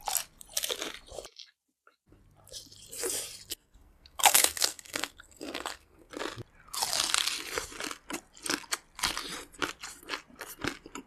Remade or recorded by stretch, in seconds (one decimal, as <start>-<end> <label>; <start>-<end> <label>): 0.0-3.5 recorded; 3.5-6.1 remade; 6.1-11.1 recorded